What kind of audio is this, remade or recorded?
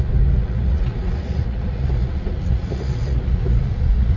remade